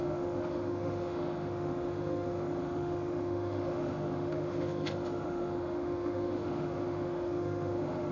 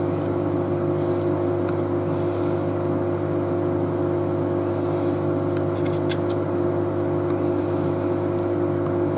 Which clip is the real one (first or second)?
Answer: second